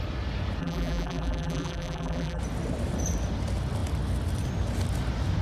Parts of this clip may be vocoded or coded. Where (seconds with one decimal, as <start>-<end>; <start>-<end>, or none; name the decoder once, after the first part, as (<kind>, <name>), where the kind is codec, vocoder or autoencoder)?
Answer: 0.6-2.4 (vocoder, BigVGAN v2)